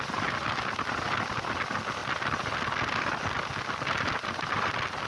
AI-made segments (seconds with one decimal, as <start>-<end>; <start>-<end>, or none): none